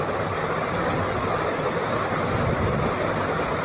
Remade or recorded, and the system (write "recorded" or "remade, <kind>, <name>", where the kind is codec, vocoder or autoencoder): recorded